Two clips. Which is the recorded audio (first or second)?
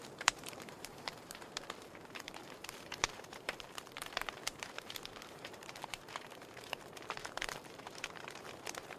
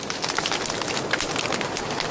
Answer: second